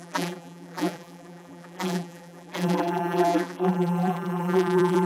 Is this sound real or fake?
fake